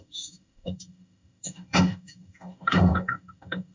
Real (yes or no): no